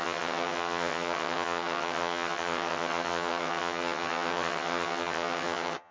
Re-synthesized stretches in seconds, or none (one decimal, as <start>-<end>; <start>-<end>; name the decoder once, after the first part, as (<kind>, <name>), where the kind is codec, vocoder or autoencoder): 0.0-5.9 (vocoder, HiFi-GAN)